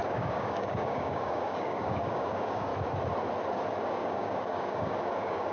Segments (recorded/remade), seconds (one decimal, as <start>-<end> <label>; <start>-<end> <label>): 0.0-2.7 remade; 2.7-3.8 recorded; 3.8-5.5 remade